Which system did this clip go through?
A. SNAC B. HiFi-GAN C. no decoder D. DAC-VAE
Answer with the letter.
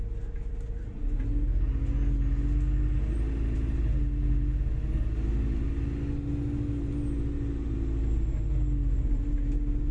C